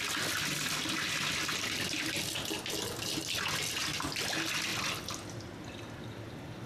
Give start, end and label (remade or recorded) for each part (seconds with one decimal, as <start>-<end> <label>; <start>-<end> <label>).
0.0-6.7 recorded